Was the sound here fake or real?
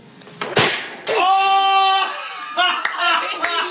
real